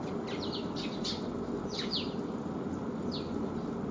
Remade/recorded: recorded